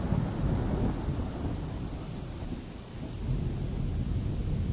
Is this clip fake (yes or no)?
no